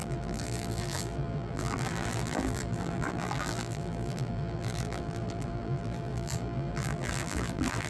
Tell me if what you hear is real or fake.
fake